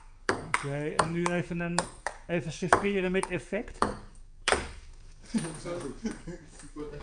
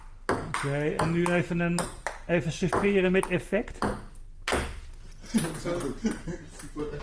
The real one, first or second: second